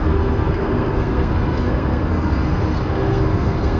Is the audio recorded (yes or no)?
no